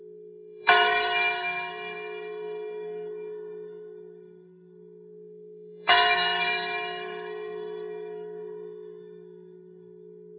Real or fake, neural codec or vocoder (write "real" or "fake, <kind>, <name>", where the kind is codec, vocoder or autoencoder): fake, codec, SNAC